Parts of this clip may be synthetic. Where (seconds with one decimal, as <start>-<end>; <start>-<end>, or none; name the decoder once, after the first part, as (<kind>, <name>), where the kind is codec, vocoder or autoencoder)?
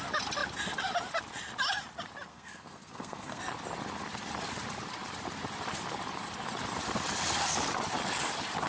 2.3-3.4 (codec, SNAC)